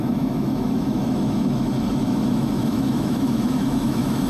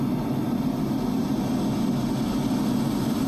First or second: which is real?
second